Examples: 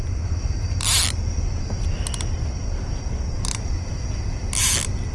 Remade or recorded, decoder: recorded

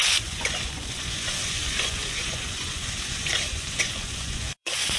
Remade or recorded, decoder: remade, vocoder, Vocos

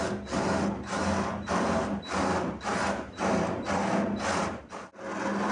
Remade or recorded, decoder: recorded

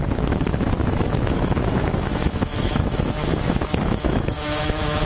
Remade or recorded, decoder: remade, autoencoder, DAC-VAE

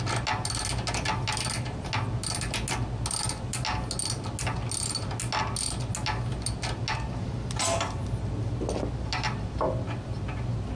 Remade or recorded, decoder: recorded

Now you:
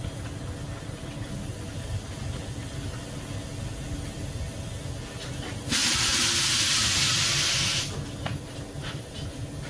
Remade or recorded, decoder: recorded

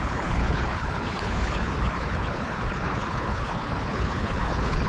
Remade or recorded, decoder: remade, codec, HILCodec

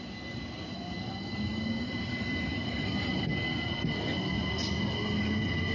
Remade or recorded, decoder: recorded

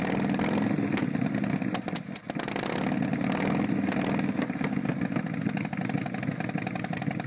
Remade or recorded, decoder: recorded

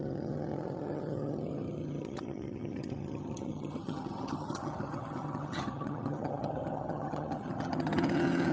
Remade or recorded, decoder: remade, vocoder, HiFi-GAN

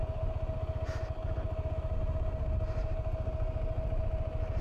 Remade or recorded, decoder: recorded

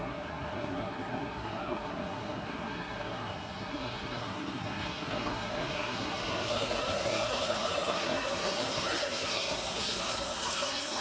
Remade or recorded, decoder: remade, codec, SNAC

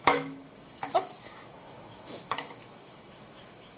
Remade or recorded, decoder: remade, autoencoder, DAC-VAE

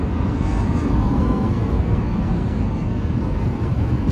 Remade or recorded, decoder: remade, codec, SNAC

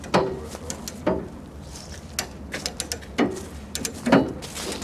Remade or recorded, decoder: recorded